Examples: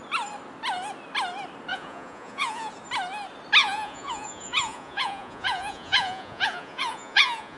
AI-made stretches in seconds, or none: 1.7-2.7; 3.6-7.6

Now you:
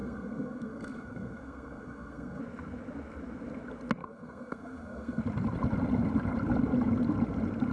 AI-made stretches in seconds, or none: 0.0-2.4; 4.0-5.2

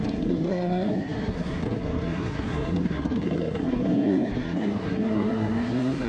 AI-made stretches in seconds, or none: 0.0-6.1

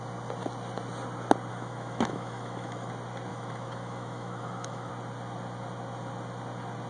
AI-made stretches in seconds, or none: 1.5-2.9; 3.3-4.9

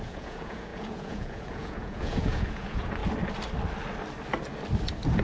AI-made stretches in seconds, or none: 0.0-3.0

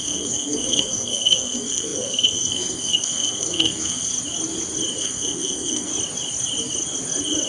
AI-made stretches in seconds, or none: 0.0-4.1; 5.0-5.9